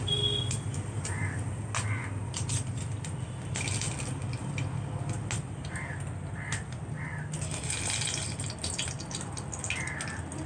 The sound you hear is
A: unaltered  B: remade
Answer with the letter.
A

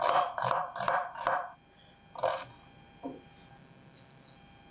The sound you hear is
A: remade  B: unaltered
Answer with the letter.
B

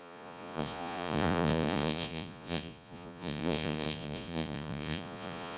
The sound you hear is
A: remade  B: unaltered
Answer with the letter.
A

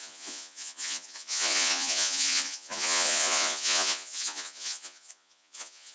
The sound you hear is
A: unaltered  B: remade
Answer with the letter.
B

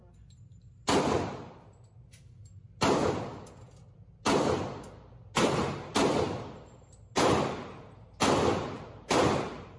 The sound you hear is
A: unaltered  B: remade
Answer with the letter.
A